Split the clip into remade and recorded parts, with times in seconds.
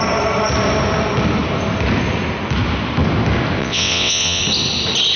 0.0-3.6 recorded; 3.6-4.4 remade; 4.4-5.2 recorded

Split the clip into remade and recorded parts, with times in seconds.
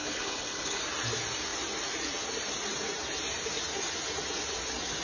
0.0-0.8 remade; 0.8-5.0 recorded